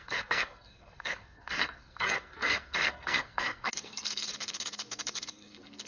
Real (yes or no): no